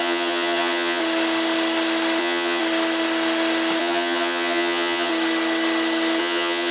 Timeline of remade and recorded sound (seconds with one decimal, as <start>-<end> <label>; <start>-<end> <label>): 0.0-1.0 remade; 1.0-2.2 recorded; 2.2-2.6 remade; 2.6-3.8 recorded; 3.8-5.1 remade; 5.1-6.2 recorded; 6.2-6.7 remade